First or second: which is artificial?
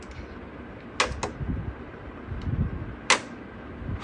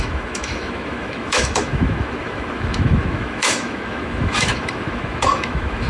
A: second